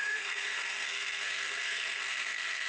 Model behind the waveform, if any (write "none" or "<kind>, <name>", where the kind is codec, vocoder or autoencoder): codec, SNAC